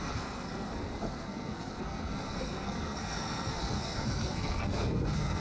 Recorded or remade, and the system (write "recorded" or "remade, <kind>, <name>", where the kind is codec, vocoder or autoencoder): remade, codec, SNAC